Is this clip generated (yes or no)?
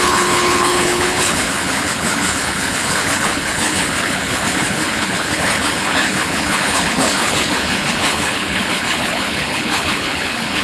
yes